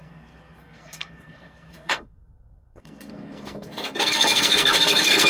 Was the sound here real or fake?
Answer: fake